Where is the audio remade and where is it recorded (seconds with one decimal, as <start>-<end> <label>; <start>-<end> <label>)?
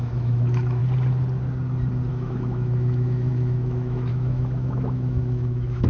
0.0-0.8 remade; 0.8-2.1 recorded; 2.1-5.9 remade